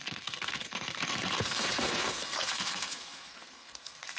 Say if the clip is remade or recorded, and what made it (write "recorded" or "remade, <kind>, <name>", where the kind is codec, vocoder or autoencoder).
remade, codec, SNAC